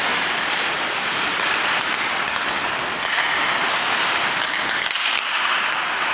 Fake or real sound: real